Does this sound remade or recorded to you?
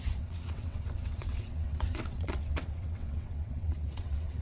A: remade